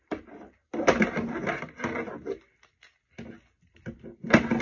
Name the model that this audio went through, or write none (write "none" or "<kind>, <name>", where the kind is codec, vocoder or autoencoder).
none